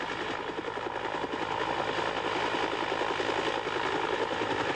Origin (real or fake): real